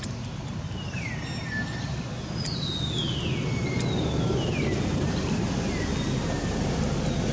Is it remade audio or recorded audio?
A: recorded